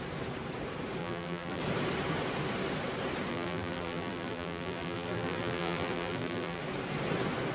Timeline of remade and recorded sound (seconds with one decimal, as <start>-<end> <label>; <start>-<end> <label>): 0.0-1.0 recorded; 1.0-1.6 remade; 1.6-3.3 recorded; 3.3-6.6 remade; 6.6-7.5 recorded